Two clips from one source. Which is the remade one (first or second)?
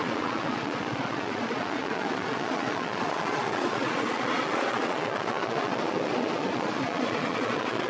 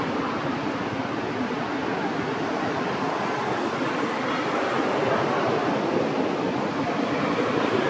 first